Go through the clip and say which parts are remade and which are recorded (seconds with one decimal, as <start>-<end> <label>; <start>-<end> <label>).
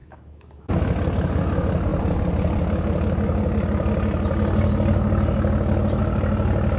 0.0-0.9 remade; 0.9-6.8 recorded